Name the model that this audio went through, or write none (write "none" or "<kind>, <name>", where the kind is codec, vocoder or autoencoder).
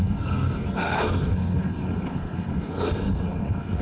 codec, SNAC